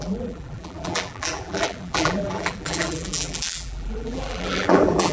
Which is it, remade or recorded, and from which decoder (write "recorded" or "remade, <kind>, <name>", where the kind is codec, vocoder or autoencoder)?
remade, vocoder, BigVGAN v2